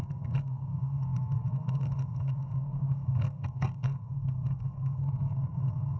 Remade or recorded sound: remade